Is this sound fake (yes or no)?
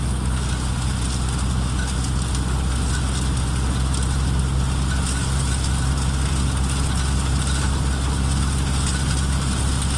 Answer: no